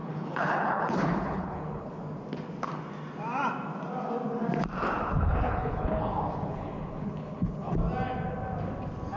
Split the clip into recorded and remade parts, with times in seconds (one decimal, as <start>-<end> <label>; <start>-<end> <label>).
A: 0.0-2.0 remade; 2.0-5.0 recorded; 5.0-7.8 remade; 7.8-9.2 recorded